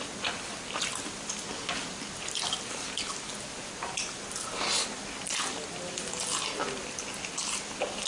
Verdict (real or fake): real